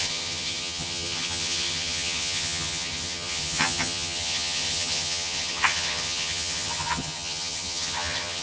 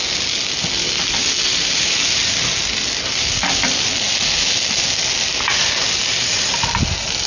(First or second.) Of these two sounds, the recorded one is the second